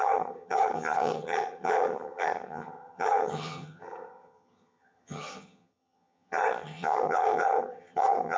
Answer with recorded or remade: remade